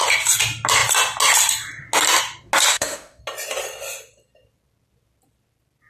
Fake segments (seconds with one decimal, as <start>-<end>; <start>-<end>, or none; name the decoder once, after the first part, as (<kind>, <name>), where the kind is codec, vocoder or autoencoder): 2.7-3.2 (autoencoder, DAC-VAE)